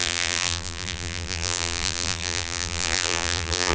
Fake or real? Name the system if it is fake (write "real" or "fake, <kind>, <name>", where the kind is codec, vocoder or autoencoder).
fake, vocoder, BigVGAN v2